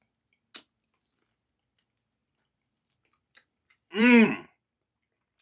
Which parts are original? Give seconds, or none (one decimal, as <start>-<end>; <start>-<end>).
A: 0.0-2.2; 5.0-5.4